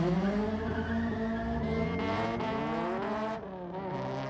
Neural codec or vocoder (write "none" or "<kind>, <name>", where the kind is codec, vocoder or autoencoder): none